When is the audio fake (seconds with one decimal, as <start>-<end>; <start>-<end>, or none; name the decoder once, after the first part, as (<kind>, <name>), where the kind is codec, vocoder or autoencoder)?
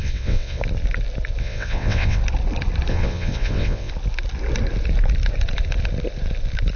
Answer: 0.0-0.6 (vocoder, WaveNeXt); 1.4-2.2; 2.9-3.9